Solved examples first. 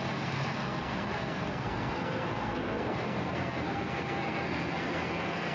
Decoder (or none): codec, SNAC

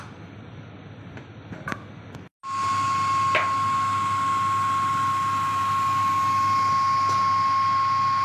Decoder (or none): none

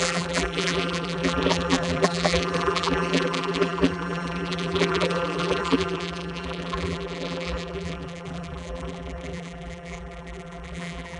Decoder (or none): vocoder, BigVGAN v2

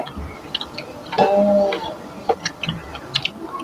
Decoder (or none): none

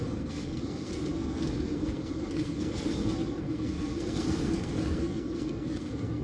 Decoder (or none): codec, SNAC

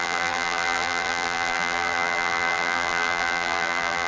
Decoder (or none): vocoder, BigVGAN v2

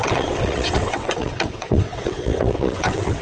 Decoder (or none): vocoder, WaveNeXt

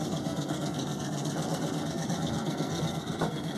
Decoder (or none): codec, SNAC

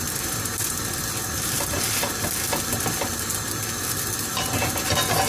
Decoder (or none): none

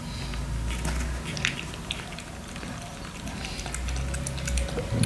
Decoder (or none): none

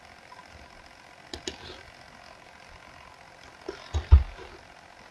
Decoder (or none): none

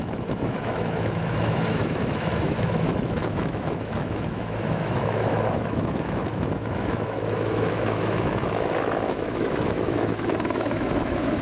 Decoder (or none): autoencoder, DAC-VAE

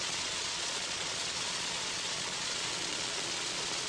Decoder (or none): vocoder, Vocos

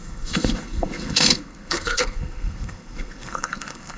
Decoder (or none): codec, SNAC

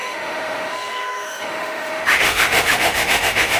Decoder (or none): autoencoder, DAC-VAE